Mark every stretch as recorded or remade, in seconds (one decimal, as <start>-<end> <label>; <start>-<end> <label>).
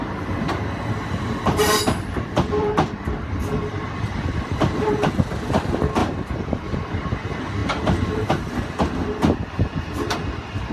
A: 0.0-6.0 recorded; 6.0-6.9 remade; 6.9-10.7 recorded